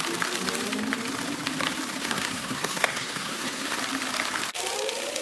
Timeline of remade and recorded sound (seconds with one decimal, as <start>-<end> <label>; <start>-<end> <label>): 0.0-2.0 recorded; 2.0-3.8 remade; 3.8-5.2 recorded